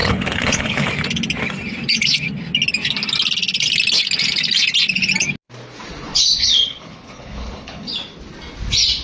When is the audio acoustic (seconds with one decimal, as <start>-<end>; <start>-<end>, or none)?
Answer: 0.9-6.1; 7.9-9.0